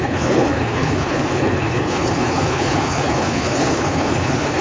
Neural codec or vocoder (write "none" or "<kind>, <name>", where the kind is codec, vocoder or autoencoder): codec, HILCodec